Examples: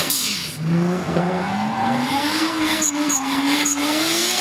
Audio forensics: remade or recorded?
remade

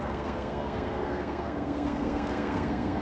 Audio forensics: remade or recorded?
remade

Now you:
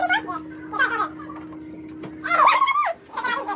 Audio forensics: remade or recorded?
recorded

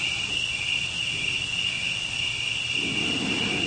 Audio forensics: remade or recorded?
recorded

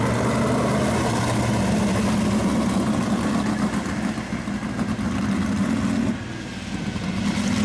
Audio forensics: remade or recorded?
recorded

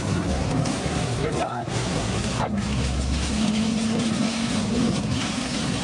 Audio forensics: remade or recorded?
remade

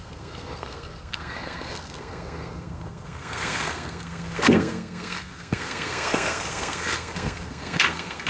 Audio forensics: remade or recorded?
remade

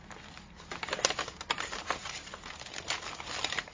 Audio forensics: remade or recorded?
recorded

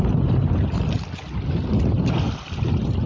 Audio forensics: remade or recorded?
recorded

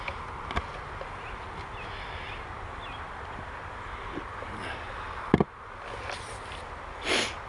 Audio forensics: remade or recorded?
recorded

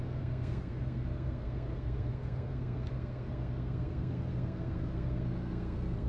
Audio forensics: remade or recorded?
remade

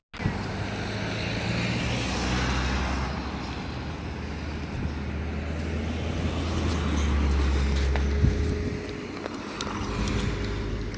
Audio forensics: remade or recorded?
recorded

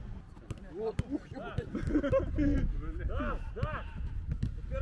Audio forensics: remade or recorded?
recorded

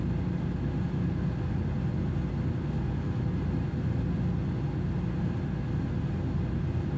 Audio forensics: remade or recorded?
recorded